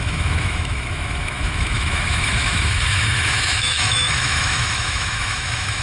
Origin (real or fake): fake